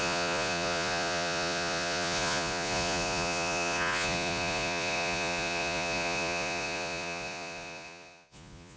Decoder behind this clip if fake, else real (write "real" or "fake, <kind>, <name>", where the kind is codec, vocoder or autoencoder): fake, vocoder, Vocos